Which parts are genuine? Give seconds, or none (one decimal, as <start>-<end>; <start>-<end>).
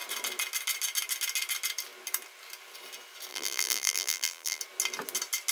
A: 0.0-3.3; 4.6-5.5